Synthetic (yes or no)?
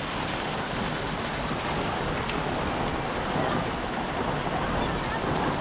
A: no